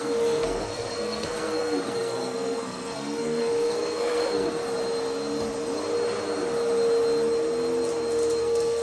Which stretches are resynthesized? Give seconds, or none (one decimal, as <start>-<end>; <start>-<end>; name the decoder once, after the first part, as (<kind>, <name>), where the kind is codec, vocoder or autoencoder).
0.0-4.6 (codec, SNAC); 8.4-8.8